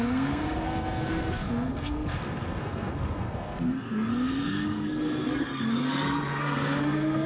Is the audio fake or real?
fake